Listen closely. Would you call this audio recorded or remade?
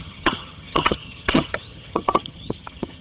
remade